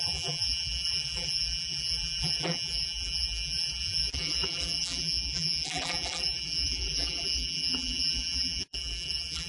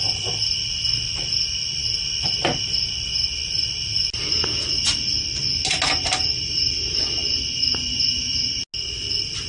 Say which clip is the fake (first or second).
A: first